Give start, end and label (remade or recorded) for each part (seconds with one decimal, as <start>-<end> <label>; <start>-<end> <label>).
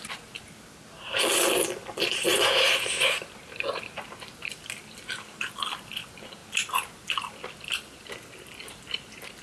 0.0-9.4 recorded